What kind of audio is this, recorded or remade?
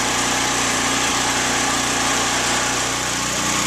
remade